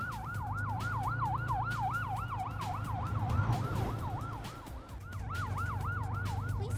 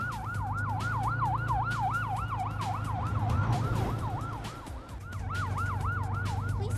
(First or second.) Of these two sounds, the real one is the second